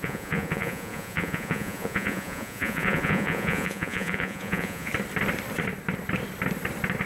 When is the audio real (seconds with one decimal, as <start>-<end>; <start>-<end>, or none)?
4.9-7.1